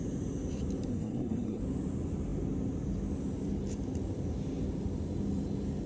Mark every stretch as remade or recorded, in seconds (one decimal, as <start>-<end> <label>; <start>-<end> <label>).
0.0-0.9 recorded; 0.9-1.6 remade; 1.6-5.9 recorded